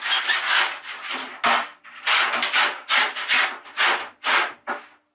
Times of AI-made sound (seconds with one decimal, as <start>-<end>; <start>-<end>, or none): none